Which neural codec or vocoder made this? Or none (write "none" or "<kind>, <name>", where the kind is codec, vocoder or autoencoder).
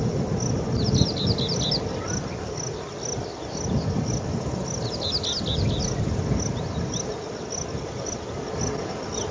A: none